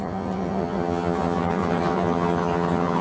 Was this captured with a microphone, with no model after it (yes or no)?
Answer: no